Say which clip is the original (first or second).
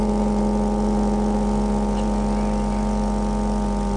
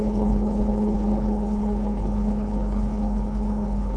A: first